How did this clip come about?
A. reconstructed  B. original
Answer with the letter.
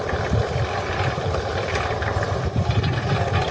B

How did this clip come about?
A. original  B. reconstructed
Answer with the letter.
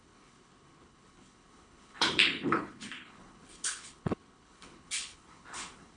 B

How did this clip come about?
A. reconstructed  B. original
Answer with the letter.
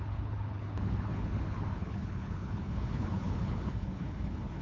A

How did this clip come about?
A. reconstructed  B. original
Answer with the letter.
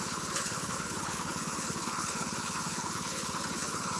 A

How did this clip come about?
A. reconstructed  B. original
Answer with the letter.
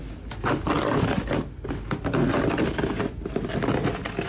B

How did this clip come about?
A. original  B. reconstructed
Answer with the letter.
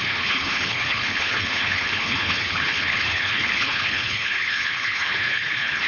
B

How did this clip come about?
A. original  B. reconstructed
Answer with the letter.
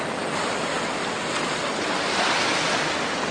A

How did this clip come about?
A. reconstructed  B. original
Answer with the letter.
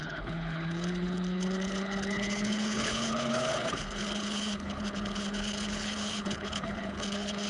A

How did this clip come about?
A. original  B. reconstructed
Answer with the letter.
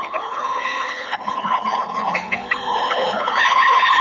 B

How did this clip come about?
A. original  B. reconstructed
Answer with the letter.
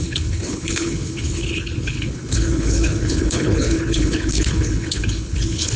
B